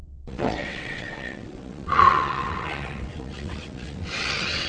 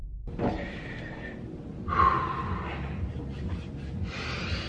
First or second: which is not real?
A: first